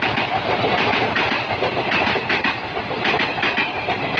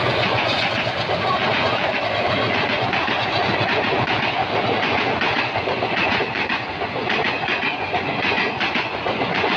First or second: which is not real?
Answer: second